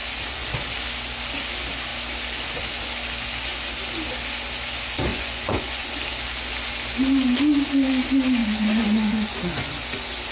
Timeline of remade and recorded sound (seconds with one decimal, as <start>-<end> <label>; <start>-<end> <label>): 0.0-5.1 recorded; 5.1-5.9 remade; 5.9-8.4 recorded; 8.4-9.7 remade; 9.7-10.3 recorded